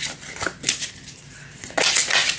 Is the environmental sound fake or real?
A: real